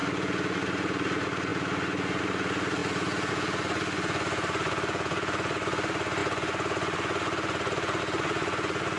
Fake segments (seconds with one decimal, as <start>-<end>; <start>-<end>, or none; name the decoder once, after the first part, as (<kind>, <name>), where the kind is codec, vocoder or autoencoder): 0.0-9.0 (vocoder, Vocos)